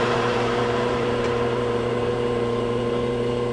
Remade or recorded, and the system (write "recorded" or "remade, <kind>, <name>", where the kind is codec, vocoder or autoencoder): remade, vocoder, BigVGAN v2